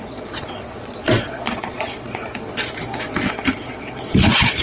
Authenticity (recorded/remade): remade